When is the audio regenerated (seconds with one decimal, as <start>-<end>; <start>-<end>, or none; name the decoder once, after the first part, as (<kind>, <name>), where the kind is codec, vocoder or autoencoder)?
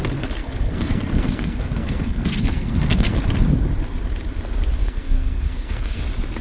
0.4-3.2 (codec, SNAC); 4.8-6.0